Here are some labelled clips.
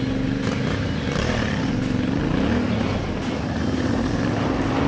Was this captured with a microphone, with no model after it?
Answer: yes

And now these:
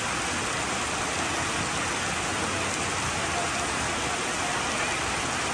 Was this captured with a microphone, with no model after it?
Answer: yes